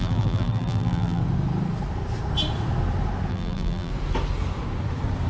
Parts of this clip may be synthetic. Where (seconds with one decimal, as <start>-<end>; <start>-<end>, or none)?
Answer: 0.0-1.2; 3.3-3.9